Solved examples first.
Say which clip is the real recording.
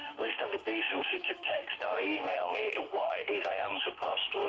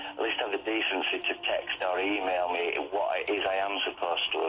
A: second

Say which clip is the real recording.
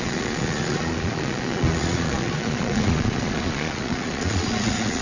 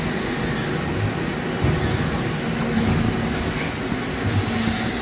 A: second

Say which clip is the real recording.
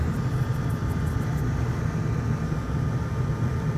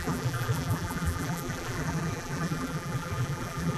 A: first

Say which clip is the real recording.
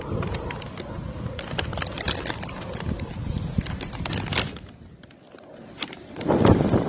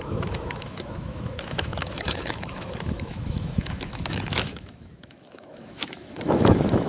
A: first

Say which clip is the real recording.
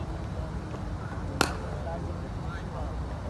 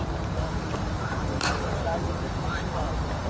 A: first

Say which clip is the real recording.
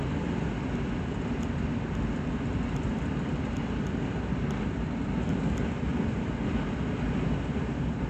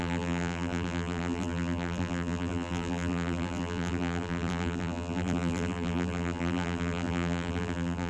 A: first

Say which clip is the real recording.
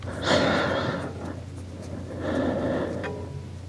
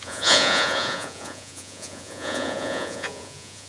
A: first